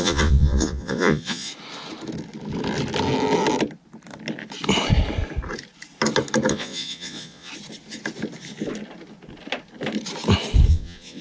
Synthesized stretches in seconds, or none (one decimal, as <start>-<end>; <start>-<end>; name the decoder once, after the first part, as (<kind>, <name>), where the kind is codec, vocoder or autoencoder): 0.0-1.5 (vocoder, Vocos); 6.5-7.5; 10.7-11.2